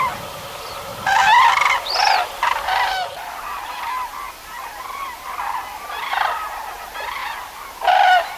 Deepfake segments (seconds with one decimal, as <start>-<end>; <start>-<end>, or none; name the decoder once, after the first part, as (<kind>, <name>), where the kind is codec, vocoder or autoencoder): 0.9-5.9 (vocoder, BigVGAN v2)